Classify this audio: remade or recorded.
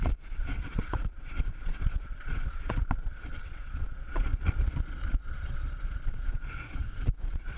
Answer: remade